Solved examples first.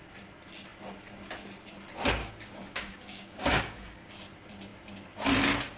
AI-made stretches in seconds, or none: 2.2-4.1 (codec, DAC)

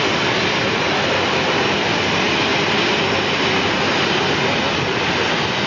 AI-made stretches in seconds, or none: none

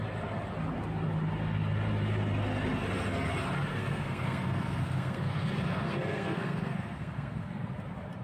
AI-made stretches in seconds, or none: 3.7-7.7 (codec, SNAC)